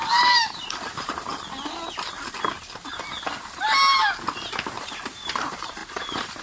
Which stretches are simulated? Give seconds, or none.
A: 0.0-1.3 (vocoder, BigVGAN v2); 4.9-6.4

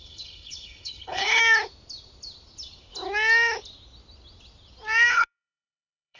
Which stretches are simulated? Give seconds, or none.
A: 0.0-1.4 (codec, HILCodec); 5.1-6.2

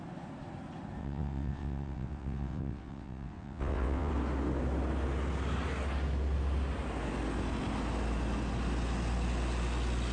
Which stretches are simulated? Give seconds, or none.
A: 1.0-4.1 (vocoder, WaveNeXt)